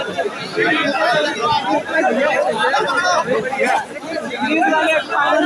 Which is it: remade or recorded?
recorded